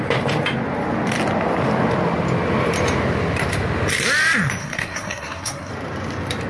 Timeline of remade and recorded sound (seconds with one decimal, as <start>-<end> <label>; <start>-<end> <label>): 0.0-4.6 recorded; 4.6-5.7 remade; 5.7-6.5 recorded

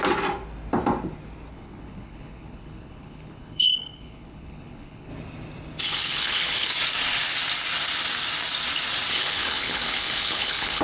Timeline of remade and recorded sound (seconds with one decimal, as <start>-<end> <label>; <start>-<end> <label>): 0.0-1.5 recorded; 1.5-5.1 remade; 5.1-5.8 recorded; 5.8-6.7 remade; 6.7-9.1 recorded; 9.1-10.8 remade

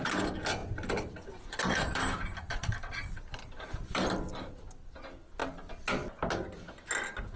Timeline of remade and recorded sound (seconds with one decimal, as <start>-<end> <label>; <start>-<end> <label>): 0.0-0.6 recorded; 0.6-4.6 remade; 4.6-7.4 recorded

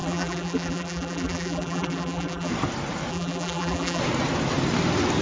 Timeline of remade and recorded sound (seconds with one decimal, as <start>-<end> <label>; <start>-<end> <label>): 0.0-2.5 remade; 2.5-3.1 recorded; 3.1-4.0 remade; 4.0-5.2 recorded

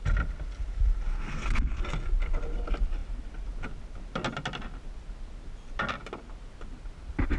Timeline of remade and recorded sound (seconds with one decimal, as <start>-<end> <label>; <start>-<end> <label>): 0.0-1.1 recorded; 1.1-1.8 remade; 1.8-7.4 recorded

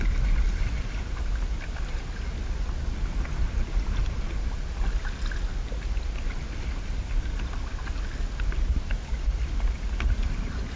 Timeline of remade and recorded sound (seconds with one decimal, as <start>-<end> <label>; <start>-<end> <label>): 0.0-10.8 recorded